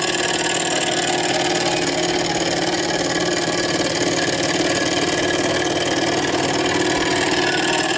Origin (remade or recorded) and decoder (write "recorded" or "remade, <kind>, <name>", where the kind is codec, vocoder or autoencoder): recorded